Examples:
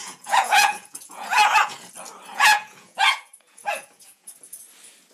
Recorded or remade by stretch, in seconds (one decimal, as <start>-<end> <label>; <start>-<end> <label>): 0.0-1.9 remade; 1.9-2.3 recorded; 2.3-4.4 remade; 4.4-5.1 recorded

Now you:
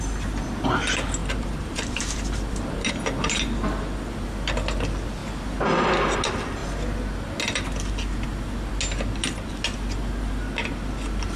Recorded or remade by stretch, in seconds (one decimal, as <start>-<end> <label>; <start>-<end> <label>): 0.0-1.2 recorded; 1.2-2.9 remade; 2.9-11.4 recorded

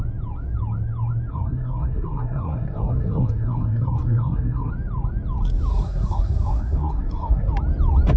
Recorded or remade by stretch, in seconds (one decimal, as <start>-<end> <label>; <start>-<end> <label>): 0.0-1.3 recorded; 1.3-4.7 remade; 4.7-5.7 recorded; 5.7-7.5 remade; 7.5-8.2 recorded

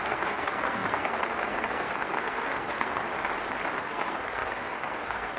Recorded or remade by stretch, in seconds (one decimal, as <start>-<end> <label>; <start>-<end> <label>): 0.0-3.0 remade; 3.0-3.8 recorded; 3.8-5.4 remade

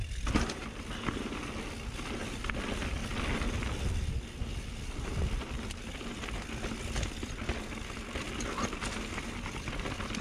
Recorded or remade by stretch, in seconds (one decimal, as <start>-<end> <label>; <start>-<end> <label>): 0.0-10.2 recorded